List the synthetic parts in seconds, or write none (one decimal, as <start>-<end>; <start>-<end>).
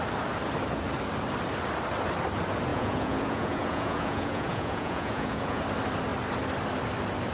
2.7-5.6